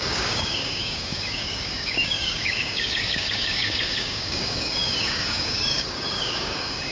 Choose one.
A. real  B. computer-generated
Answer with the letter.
B